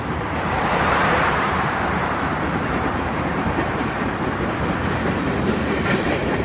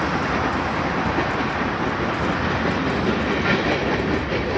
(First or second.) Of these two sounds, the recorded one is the second